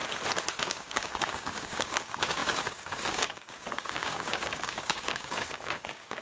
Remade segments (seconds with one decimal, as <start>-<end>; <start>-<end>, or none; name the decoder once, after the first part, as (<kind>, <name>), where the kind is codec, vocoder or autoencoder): 0.6-6.2 (codec, DAC)